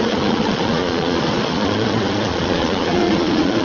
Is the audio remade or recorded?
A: remade